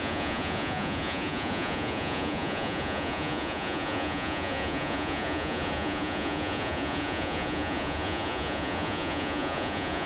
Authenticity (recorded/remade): remade